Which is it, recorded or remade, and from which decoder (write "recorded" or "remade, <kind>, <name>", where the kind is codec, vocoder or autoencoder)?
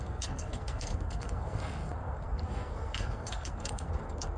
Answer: remade, codec, SNAC